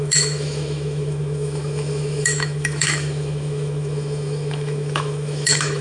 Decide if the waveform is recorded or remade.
remade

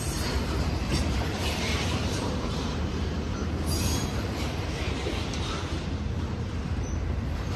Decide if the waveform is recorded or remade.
remade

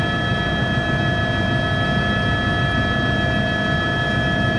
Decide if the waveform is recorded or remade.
recorded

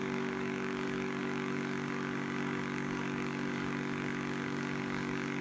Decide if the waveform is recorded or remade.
remade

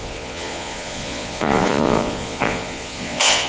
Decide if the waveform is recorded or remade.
remade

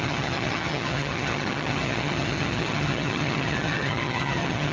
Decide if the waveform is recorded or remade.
remade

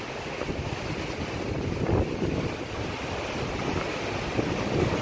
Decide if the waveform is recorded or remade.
remade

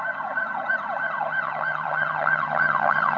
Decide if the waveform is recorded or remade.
remade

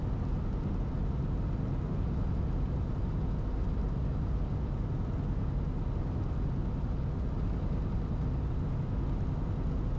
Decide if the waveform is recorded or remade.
recorded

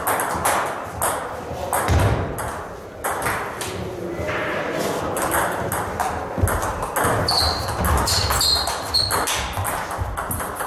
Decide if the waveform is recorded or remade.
recorded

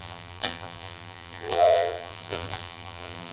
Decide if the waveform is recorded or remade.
remade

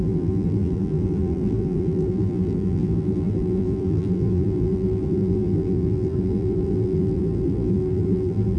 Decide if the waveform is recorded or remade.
remade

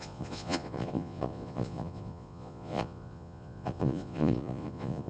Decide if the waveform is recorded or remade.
remade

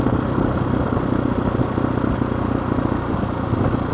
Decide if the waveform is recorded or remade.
recorded